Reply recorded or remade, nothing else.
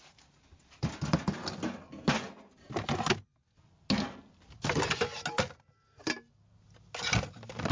recorded